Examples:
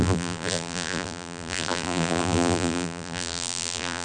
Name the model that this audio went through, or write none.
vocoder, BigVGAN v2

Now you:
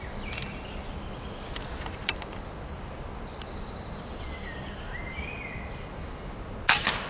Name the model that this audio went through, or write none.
none